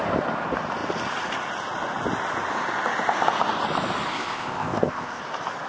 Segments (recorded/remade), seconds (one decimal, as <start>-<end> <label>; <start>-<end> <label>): 0.0-4.1 recorded; 4.1-5.2 remade; 5.2-5.7 recorded